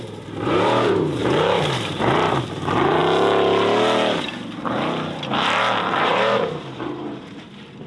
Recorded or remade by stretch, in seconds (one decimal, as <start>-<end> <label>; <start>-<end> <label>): 0.0-3.0 remade; 3.0-4.3 recorded; 4.3-7.9 remade